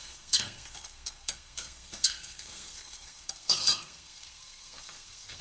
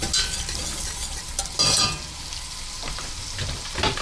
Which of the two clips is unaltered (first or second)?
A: second